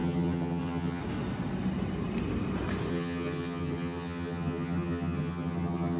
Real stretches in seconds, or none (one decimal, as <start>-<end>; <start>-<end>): 1.0-2.9